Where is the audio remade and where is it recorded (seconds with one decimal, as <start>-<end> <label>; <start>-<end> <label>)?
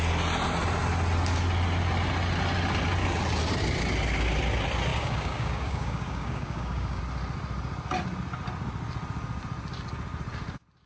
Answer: 0.0-4.9 recorded; 4.9-7.0 remade; 7.0-10.9 recorded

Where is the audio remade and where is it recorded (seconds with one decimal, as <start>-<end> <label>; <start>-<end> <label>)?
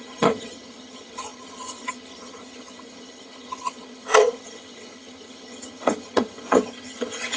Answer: 0.0-7.4 remade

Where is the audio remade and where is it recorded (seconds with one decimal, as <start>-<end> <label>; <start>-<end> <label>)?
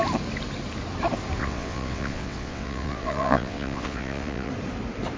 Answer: 0.0-1.4 recorded; 1.4-4.5 remade; 4.5-5.2 recorded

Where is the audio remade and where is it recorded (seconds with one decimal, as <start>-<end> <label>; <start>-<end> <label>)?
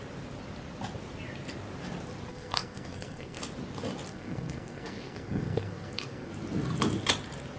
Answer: 0.0-2.3 recorded; 2.3-3.4 remade; 3.4-4.1 recorded; 4.1-6.3 remade; 6.3-7.6 recorded